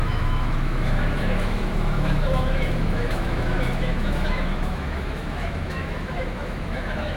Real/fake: fake